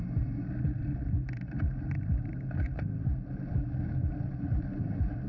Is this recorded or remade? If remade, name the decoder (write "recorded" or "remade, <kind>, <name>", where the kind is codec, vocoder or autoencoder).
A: remade, vocoder, BigVGAN v2